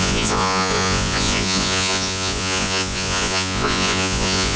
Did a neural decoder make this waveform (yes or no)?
yes